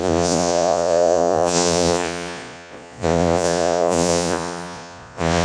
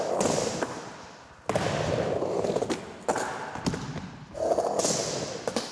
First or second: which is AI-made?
first